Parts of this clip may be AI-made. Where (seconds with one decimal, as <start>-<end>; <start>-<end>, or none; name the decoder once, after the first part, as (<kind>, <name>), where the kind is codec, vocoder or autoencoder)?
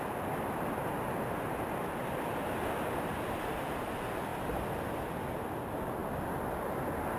none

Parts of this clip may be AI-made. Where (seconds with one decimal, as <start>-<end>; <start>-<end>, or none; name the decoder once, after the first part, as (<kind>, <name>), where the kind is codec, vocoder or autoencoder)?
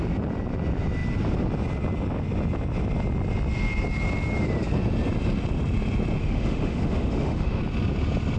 6.2-7.6 (autoencoder, DAC-VAE)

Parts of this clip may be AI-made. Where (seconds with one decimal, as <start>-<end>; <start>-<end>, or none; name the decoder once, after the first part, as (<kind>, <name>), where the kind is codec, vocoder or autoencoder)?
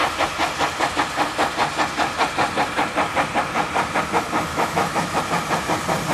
4.5-5.2 (autoencoder, DAC-VAE)